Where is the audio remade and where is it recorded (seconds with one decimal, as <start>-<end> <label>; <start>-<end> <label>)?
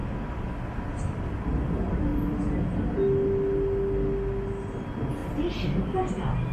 0.0-1.0 recorded; 1.0-2.1 remade; 2.1-4.8 recorded; 4.8-5.2 remade; 5.2-5.8 recorded; 5.8-6.5 remade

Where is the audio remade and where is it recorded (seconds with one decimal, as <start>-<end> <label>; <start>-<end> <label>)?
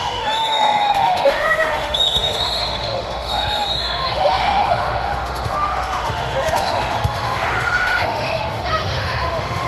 0.0-9.7 remade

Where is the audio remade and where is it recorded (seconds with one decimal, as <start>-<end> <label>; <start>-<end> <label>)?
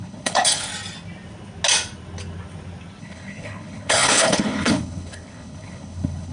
0.0-0.7 remade; 0.7-3.0 recorded; 3.0-6.3 remade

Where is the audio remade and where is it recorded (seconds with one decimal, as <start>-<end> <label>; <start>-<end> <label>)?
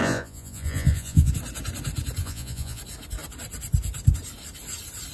0.0-1.3 remade; 1.3-2.2 recorded; 2.2-2.8 remade; 2.8-5.1 recorded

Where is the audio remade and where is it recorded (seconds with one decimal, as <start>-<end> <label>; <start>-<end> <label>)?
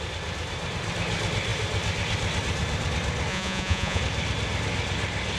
0.0-3.3 recorded; 3.3-4.0 remade; 4.0-5.4 recorded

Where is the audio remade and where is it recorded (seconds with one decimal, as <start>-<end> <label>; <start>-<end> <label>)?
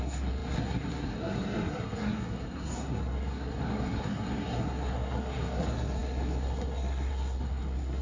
0.0-8.0 remade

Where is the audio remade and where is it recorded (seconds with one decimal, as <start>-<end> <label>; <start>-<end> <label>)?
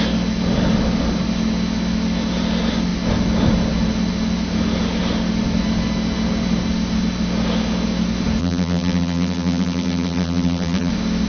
0.0-8.4 recorded; 8.4-10.9 remade; 10.9-11.3 recorded